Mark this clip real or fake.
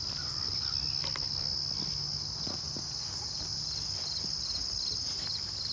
real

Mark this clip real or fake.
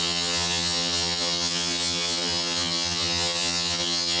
fake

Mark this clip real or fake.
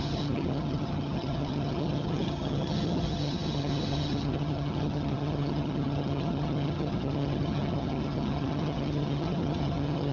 fake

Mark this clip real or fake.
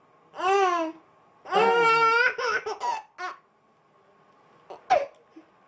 real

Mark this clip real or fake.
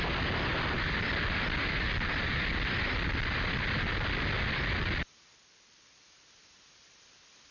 real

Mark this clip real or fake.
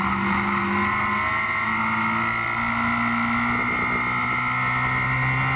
real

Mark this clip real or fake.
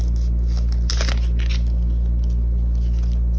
real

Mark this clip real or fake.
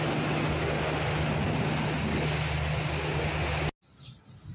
real